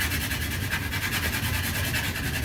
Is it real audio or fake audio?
real